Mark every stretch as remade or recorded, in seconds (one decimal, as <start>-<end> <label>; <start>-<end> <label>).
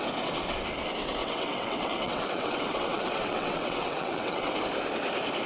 0.0-1.2 recorded; 1.2-4.5 remade; 4.5-5.5 recorded